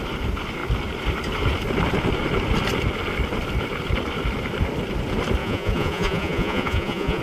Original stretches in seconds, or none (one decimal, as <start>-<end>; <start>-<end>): 0.0-5.4